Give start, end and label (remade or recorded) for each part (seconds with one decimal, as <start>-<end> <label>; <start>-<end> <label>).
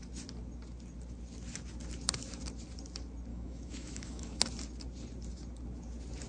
0.0-3.3 recorded; 3.3-4.4 remade; 4.4-6.3 recorded